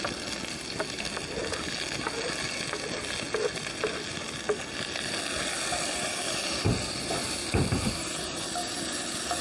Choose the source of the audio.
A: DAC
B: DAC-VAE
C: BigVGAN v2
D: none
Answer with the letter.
D